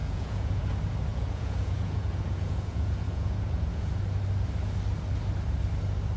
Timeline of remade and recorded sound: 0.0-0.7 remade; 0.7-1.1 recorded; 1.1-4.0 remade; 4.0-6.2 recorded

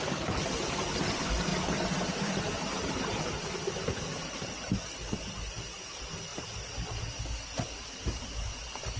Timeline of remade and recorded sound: 0.0-9.0 recorded

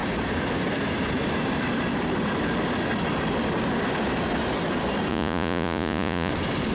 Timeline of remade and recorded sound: 0.0-5.1 recorded; 5.1-6.3 remade; 6.3-6.7 recorded

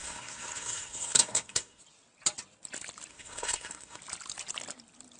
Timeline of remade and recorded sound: 0.0-1.8 remade; 1.8-3.1 recorded; 3.1-4.0 remade; 4.0-5.2 recorded

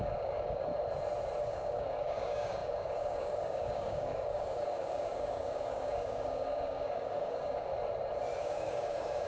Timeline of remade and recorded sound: 0.0-0.7 remade; 0.7-1.4 recorded; 1.4-7.7 remade; 7.7-8.4 recorded; 8.4-9.3 remade

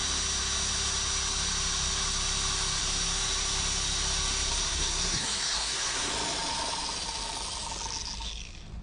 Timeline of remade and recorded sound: 0.0-4.5 recorded; 4.5-6.1 remade; 6.1-8.8 recorded

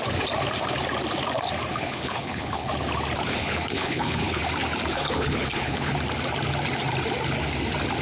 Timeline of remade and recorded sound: 0.0-1.7 recorded; 1.7-2.7 remade; 2.7-3.3 recorded; 3.3-4.4 remade; 4.4-4.9 recorded; 4.9-5.9 remade; 5.9-8.0 recorded